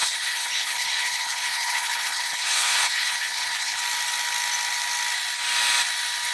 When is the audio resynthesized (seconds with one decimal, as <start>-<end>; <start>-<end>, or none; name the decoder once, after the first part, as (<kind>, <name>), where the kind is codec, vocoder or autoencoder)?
0.0-3.8 (codec, HILCodec)